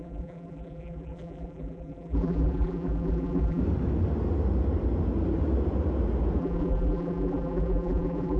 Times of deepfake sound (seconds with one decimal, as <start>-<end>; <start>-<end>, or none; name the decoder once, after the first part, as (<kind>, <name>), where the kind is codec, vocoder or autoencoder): 0.0-3.6 (vocoder, BigVGAN v2); 6.4-8.4